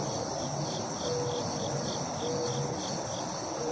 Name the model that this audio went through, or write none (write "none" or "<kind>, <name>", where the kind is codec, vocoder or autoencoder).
none